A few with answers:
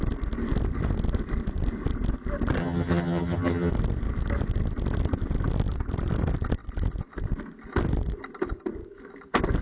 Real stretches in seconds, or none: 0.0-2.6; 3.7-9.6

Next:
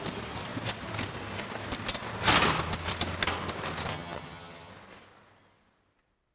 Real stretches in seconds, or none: 0.0-3.9; 4.7-6.3

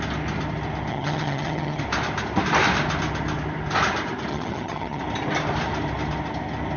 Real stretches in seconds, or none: 0.0-0.9; 1.8-4.3; 5.0-6.8